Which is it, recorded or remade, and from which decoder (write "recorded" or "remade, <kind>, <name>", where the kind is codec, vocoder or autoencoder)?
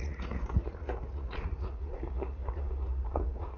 remade, vocoder, Vocos